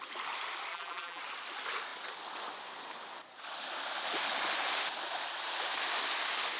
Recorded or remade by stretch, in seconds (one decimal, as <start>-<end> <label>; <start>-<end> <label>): 0.0-0.7 recorded; 0.7-1.2 remade; 1.2-6.6 recorded